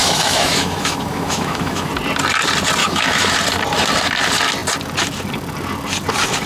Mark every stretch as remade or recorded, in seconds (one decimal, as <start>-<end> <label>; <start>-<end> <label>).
0.0-1.9 remade; 1.9-2.8 recorded; 2.8-3.3 remade; 3.3-6.5 recorded